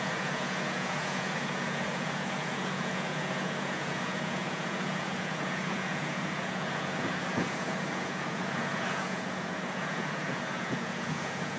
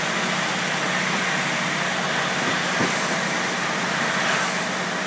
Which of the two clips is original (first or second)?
second